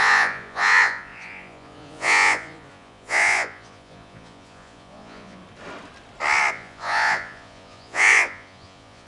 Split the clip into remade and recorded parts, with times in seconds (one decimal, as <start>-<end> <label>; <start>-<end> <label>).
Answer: 0.0-5.4 remade; 5.4-6.5 recorded; 6.5-9.1 remade